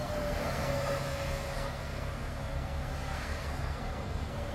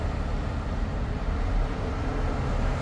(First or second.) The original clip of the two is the second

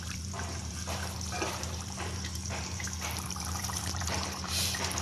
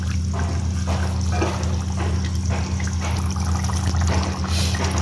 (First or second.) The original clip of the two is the second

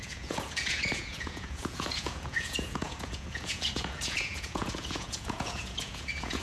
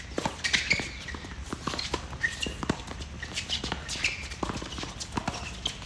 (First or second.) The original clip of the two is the second